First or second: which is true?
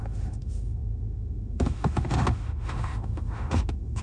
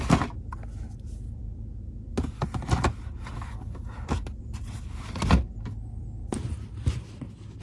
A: second